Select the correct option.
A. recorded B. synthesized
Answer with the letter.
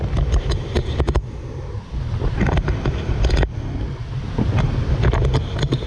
A